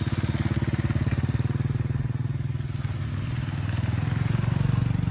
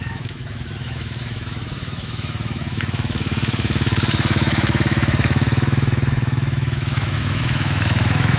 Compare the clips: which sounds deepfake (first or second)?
second